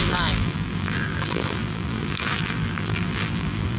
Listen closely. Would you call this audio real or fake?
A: fake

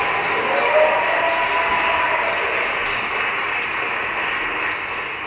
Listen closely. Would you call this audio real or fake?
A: real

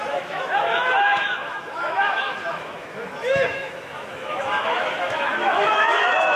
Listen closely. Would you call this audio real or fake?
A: fake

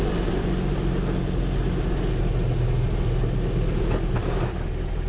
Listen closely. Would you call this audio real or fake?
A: real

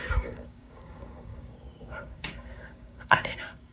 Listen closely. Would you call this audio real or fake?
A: fake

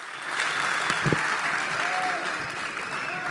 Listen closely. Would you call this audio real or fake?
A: real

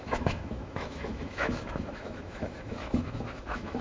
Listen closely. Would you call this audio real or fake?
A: fake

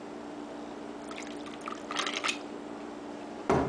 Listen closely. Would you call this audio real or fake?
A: real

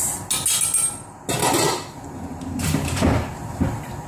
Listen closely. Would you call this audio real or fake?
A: real